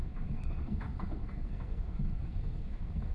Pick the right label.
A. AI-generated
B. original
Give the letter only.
A